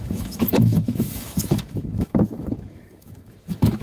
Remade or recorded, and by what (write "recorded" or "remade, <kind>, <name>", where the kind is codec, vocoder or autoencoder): remade, autoencoder, DAC-VAE